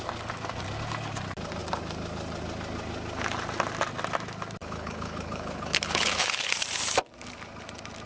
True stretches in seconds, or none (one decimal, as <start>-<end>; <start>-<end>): 0.0-4.6; 6.5-8.1